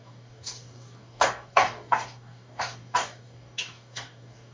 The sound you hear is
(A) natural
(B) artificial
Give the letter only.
B